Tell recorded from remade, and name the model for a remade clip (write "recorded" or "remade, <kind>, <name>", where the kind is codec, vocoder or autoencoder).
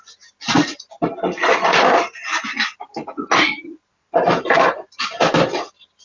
recorded